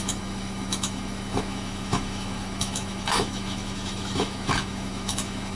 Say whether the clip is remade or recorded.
remade